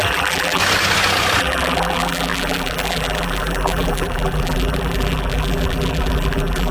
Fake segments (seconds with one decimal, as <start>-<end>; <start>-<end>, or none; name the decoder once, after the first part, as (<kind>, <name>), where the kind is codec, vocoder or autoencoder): 0.0-0.6 (vocoder, BigVGAN v2); 1.4-6.7